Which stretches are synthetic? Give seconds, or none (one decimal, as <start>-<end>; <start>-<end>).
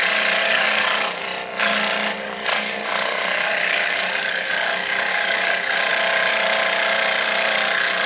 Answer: 0.4-1.2; 2.5-4.5; 5.1-5.9